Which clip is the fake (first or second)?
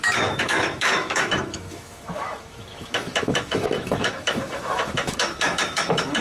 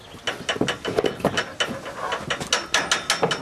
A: first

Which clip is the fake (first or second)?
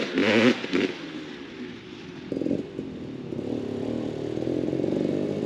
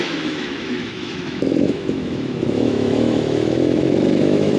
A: second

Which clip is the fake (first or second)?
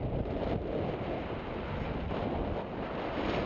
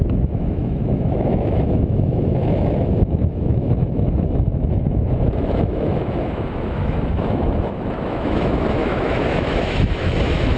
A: second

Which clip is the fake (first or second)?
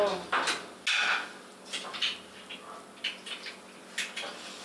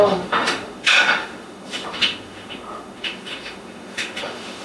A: second